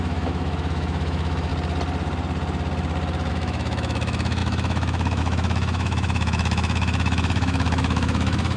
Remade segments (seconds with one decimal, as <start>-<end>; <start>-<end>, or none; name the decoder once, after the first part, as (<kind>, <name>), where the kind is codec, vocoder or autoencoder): 0.0-1.5 (autoencoder, DAC-VAE); 3.3-8.6